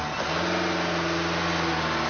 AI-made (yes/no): no